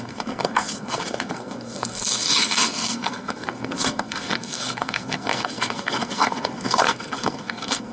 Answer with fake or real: fake